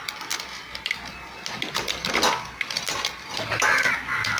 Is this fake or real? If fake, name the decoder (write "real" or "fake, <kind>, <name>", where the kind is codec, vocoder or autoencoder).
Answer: real